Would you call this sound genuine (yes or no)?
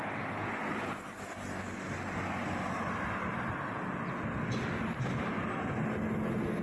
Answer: yes